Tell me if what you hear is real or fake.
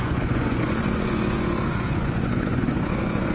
fake